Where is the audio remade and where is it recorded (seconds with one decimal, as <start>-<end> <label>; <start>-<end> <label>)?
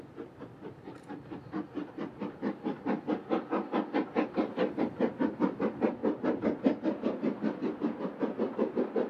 0.0-9.1 recorded